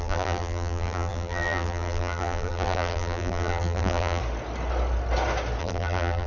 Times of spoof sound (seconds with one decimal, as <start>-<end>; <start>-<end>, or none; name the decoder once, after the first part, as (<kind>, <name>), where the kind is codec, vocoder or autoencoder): 0.0-4.2 (vocoder, BigVGAN v2); 5.6-6.3